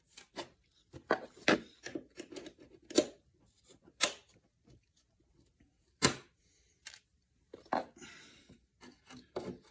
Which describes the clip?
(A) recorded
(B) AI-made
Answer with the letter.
B